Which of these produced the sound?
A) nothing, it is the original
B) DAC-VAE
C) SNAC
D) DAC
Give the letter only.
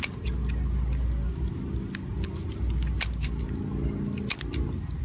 A